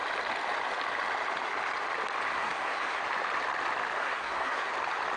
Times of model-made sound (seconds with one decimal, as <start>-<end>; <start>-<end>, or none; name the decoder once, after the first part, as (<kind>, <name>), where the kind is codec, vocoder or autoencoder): 2.3-3.0 (codec, SNAC); 4.0-4.7